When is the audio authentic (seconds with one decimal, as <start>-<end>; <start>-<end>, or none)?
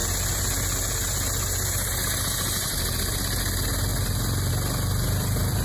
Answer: 0.0-5.6